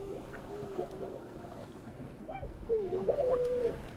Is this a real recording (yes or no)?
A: no